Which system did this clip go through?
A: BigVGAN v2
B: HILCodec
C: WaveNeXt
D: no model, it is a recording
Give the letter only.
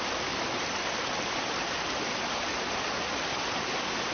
D